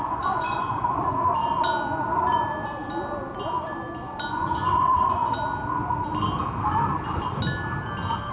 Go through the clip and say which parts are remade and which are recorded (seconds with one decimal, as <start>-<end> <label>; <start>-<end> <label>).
0.0-1.4 remade; 1.4-4.3 recorded; 4.3-5.2 remade; 5.2-8.3 recorded